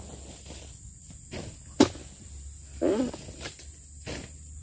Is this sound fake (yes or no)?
no